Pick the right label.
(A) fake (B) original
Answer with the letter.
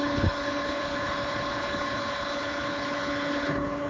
A